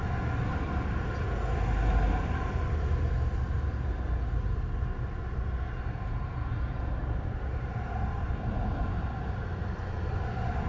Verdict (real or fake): real